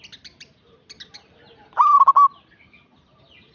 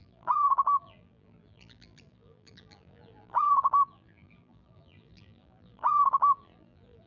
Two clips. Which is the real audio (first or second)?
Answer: first